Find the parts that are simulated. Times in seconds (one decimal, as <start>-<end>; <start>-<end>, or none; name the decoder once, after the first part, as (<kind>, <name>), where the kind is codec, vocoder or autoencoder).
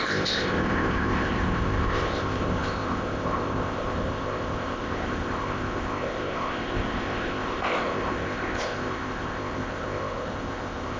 0.0-11.0 (codec, ZipCodec)